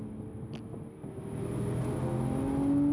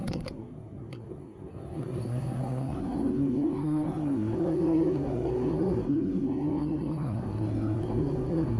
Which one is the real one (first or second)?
first